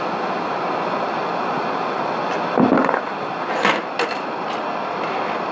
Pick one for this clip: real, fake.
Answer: real